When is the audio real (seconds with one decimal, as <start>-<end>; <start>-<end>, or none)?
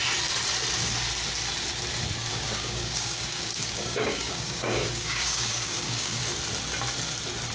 0.0-2.3; 6.2-7.5